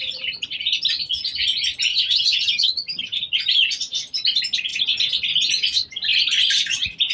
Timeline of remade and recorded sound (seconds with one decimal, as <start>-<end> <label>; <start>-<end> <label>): 0.0-1.9 recorded; 1.9-3.2 remade; 3.2-7.1 recorded